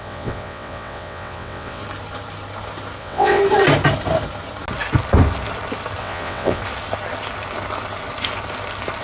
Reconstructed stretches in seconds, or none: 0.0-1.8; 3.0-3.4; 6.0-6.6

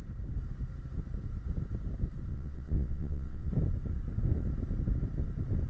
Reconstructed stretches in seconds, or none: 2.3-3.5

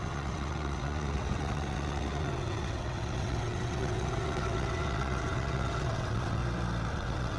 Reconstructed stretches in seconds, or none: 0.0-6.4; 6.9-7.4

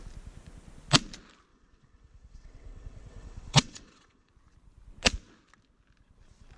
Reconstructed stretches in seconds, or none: 1.5-4.3